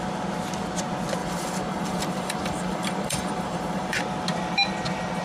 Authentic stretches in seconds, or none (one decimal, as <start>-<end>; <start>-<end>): 0.0-1.2; 4.0-5.2